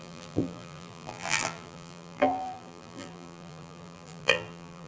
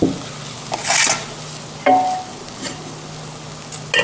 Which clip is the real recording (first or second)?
second